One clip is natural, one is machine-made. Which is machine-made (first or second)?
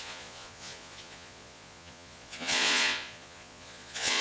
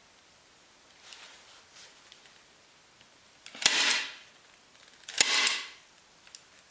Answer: first